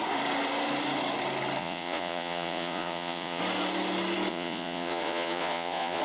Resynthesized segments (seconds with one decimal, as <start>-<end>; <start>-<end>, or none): 1.6-3.4; 4.3-6.0